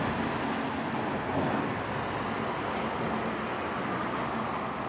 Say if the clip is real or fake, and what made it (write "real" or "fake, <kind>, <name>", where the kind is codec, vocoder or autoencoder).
real